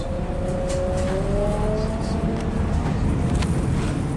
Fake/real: real